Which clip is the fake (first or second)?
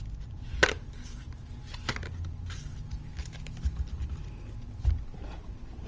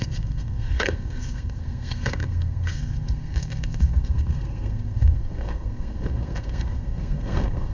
second